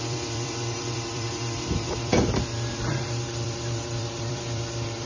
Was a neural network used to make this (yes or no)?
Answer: yes